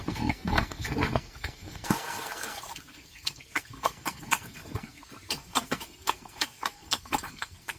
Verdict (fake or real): fake